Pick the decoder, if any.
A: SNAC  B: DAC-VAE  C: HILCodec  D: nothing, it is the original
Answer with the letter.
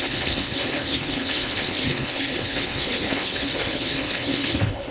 C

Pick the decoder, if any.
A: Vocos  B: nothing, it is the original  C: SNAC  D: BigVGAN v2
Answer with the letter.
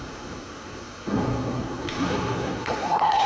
C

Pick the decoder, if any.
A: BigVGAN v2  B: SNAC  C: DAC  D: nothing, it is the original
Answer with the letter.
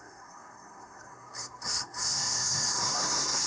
B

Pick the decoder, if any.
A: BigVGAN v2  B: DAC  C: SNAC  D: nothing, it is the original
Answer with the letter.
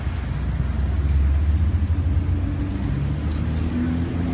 D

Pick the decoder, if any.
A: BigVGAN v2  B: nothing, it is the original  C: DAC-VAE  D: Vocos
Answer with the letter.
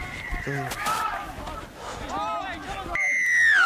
B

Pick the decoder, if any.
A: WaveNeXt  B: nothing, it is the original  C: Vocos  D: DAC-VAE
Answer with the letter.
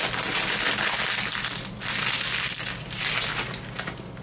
B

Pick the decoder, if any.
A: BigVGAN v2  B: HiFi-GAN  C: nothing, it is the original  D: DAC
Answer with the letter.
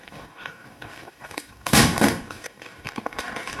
D